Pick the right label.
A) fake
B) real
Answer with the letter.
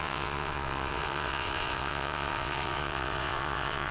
A